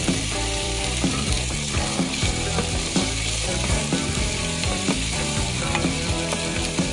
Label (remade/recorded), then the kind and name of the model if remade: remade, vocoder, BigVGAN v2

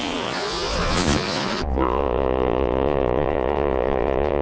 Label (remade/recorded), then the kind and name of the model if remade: remade, vocoder, Vocos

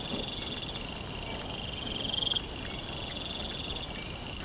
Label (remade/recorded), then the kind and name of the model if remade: recorded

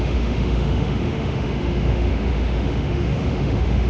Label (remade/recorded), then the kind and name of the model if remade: remade, autoencoder, DAC-VAE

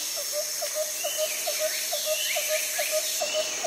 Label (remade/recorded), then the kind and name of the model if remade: recorded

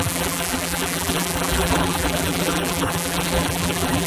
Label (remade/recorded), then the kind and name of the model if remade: remade, vocoder, BigVGAN v2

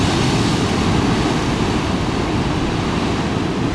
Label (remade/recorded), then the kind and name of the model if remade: recorded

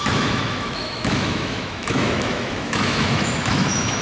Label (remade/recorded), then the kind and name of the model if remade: remade, autoencoder, DAC-VAE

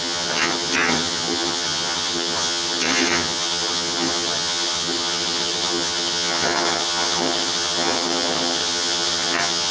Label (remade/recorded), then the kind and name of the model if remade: remade, vocoder, HiFi-GAN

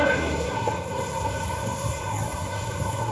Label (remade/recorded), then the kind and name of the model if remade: remade, codec, SNAC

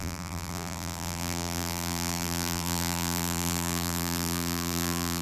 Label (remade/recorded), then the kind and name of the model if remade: remade, vocoder, BigVGAN v2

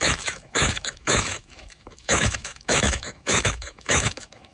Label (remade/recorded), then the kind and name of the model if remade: remade, autoencoder, DAC-VAE